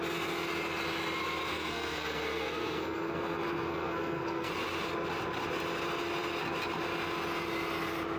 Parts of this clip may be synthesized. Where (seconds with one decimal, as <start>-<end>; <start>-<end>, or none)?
1.5-4.5